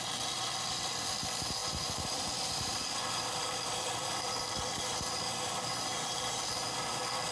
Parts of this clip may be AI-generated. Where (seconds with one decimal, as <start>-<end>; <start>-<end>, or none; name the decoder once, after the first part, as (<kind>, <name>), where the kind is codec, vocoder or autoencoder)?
1.6-4.8 (vocoder, BigVGAN v2)